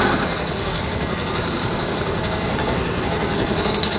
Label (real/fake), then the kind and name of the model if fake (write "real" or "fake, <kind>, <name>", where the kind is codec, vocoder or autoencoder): fake, codec, SNAC